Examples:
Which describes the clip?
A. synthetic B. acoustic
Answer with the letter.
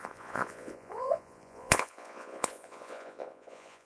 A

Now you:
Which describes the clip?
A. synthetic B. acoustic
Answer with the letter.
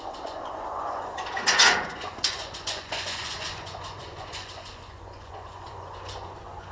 A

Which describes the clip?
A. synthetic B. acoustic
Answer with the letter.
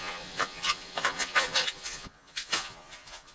A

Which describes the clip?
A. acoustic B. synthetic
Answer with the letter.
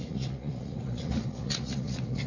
B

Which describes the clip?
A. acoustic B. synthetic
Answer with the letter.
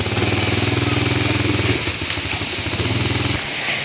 A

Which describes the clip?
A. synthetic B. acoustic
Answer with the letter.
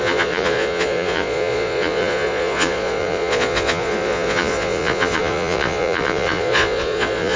A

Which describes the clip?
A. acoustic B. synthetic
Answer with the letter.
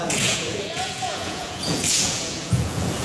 B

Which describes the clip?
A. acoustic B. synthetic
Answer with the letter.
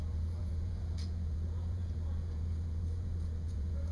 B